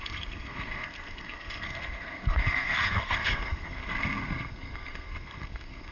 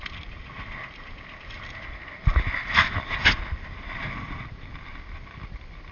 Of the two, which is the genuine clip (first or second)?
second